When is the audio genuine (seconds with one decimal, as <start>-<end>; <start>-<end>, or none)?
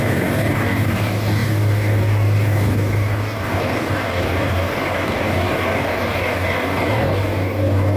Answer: none